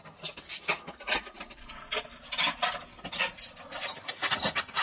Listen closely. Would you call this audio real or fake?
real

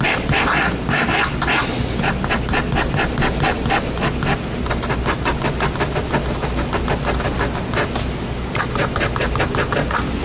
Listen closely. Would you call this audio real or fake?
real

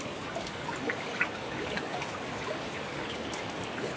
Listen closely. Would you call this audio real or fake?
fake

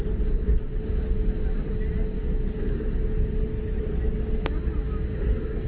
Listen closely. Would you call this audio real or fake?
real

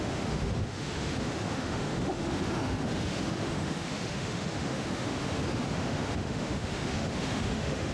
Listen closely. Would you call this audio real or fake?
fake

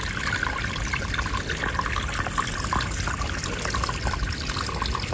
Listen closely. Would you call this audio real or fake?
real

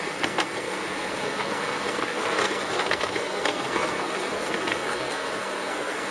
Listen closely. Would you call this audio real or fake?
fake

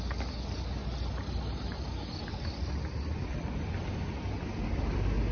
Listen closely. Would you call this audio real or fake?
real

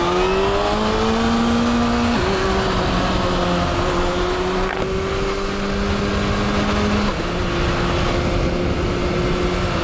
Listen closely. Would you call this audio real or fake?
real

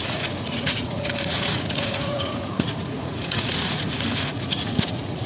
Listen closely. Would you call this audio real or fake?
fake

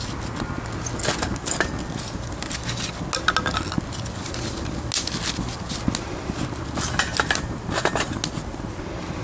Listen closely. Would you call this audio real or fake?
real